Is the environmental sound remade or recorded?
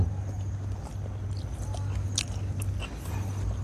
recorded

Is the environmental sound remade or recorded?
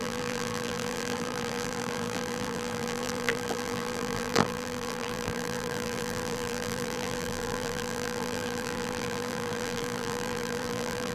remade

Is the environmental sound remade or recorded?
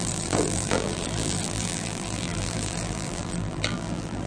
remade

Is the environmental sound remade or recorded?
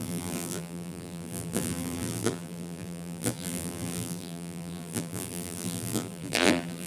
remade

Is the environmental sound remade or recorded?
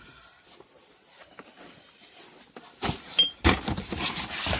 remade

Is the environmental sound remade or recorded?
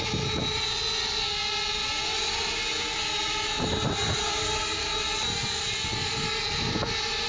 recorded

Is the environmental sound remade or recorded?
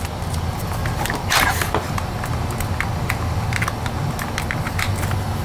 recorded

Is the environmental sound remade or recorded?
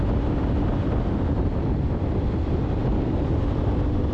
remade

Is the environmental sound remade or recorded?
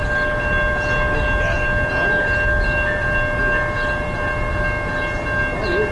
recorded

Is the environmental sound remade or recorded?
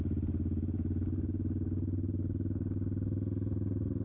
recorded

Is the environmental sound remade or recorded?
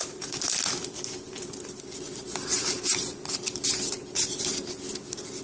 remade